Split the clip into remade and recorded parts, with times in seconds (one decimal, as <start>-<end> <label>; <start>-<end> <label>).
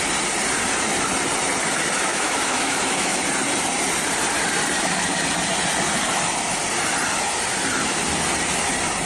0.0-2.1 recorded; 2.1-3.2 remade; 3.2-9.1 recorded